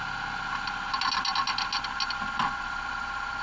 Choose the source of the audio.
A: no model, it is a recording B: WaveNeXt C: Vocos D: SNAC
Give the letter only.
A